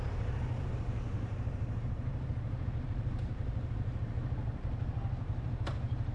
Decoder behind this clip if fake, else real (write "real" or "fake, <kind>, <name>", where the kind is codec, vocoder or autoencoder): fake, vocoder, BigVGAN v2